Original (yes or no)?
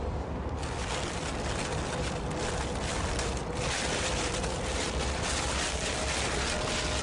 yes